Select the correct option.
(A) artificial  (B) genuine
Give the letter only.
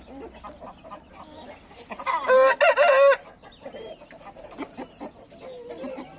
B